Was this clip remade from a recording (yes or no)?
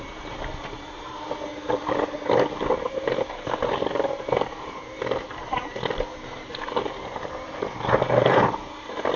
yes